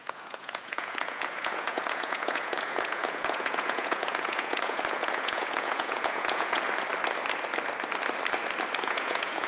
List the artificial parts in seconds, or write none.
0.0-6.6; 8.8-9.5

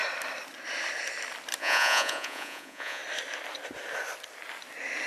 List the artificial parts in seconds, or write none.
1.6-3.0